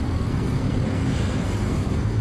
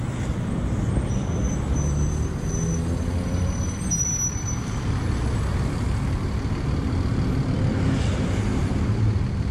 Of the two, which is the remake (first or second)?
first